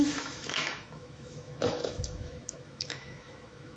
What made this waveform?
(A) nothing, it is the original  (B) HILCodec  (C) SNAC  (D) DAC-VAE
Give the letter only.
D